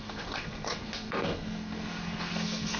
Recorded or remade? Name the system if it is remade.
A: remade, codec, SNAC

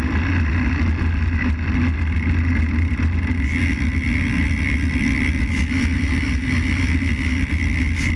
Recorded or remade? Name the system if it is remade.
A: recorded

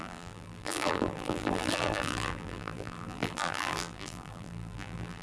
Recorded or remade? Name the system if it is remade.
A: remade, vocoder, BigVGAN v2